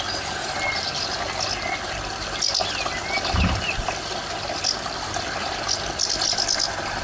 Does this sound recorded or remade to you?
recorded